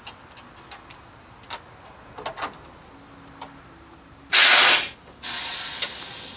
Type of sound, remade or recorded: recorded